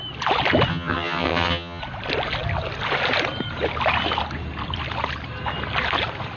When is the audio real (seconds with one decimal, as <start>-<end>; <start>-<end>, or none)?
0.0-0.7; 1.8-6.4